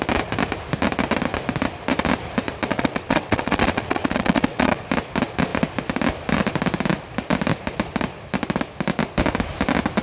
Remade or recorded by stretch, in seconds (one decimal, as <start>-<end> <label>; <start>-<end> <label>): 0.0-2.7 recorded; 2.7-4.8 remade; 4.8-10.0 recorded